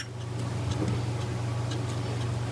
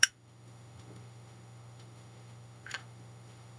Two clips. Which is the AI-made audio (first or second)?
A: second